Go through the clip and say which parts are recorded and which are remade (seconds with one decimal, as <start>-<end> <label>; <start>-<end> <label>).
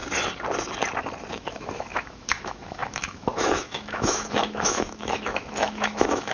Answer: 0.0-1.3 recorded; 1.3-6.3 remade